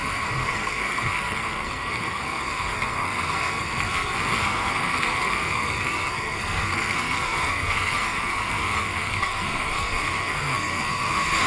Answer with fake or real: fake